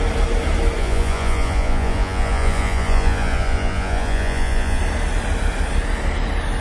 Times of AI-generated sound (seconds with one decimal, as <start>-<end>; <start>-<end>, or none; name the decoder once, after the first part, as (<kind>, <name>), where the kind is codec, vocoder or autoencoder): 0.8-4.8 (vocoder, Vocos)